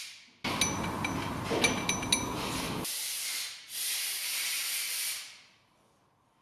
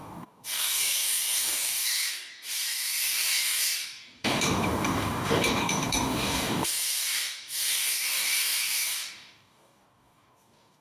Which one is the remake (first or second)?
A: second